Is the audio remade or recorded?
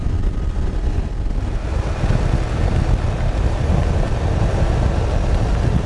recorded